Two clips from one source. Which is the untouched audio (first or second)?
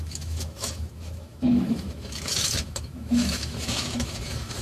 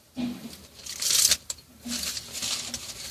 second